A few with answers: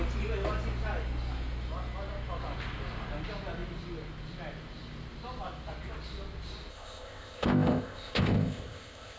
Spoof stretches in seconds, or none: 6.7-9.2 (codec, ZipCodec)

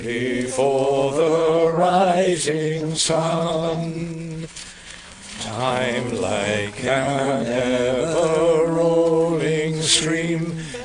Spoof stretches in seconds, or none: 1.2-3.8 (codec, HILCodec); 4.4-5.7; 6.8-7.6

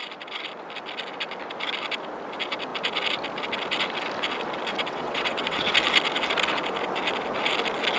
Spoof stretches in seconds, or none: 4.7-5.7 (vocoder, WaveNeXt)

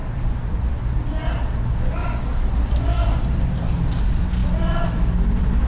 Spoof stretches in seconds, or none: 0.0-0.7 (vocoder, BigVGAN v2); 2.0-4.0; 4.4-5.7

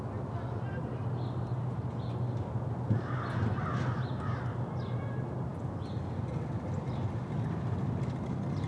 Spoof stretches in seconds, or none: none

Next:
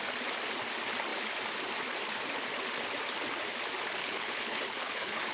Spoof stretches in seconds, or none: 4.0-5.3 (codec, HILCodec)